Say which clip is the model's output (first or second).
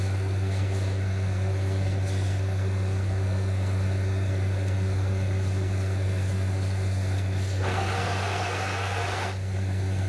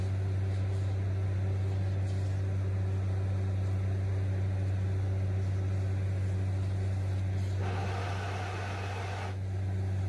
first